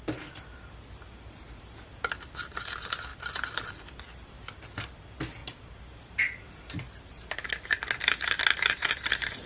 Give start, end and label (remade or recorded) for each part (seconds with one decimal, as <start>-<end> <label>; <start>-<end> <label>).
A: 0.0-3.1 recorded; 3.1-3.7 remade; 3.7-5.4 recorded; 5.4-9.5 remade